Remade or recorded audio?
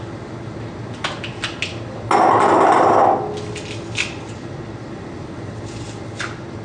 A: recorded